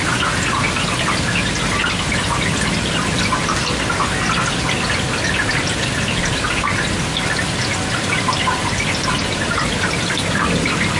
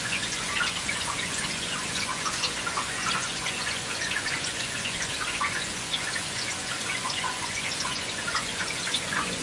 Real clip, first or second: first